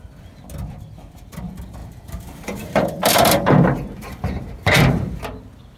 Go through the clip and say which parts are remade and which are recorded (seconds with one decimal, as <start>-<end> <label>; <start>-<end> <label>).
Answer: 0.0-1.8 recorded; 1.8-5.1 remade; 5.1-5.8 recorded